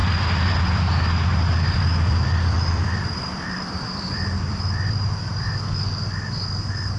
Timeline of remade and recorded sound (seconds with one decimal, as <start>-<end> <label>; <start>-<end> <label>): 0.0-0.8 remade; 0.8-1.3 recorded; 1.3-5.5 remade; 5.5-7.0 recorded